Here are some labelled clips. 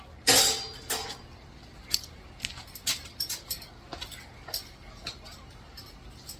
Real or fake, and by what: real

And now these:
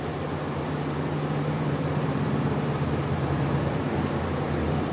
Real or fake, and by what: fake, vocoder, BigVGAN v2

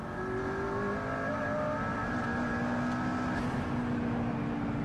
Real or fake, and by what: real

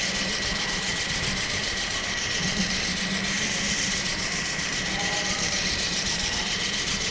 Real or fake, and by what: fake, vocoder, BigVGAN v2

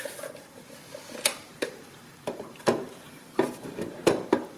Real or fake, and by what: fake, vocoder, BigVGAN v2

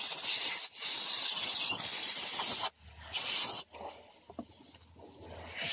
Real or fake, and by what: real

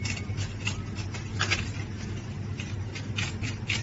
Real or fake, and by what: real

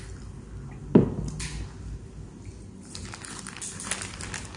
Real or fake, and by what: real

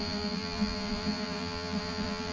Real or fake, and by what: fake, vocoder, BigVGAN v2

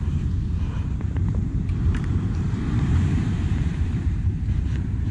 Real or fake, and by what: fake, vocoder, BigVGAN v2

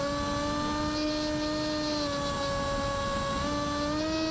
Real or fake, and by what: real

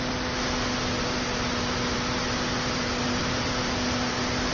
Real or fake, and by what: real